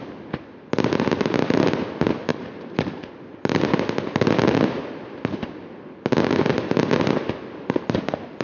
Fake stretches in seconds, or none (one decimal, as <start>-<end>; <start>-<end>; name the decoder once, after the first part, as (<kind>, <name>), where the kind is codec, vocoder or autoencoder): 2.3-3.0 (vocoder, BigVGAN v2)